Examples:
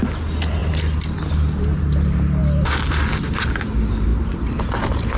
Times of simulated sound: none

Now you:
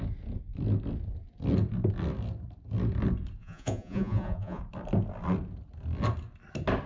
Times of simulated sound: 3.4-4.6 (vocoder, Vocos)

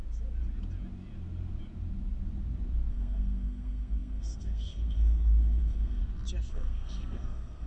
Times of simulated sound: 2.9-6.0 (codec, SNAC); 6.5-7.7

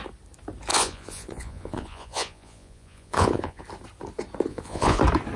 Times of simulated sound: 0.7-3.6 (vocoder, Vocos); 4.5-5.0

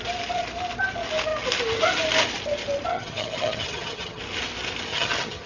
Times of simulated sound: 2.9-4.2 (vocoder, HiFi-GAN); 4.9-5.5

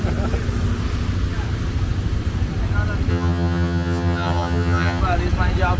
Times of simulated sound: 3.1-5.0 (vocoder, HiFi-GAN)

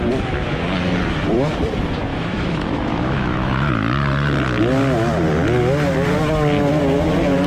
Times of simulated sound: 2.1-3.7 (autoencoder, DAC-VAE)

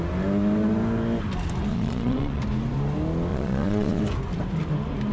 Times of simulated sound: 1.7-2.4 (vocoder, Vocos); 3.3-4.0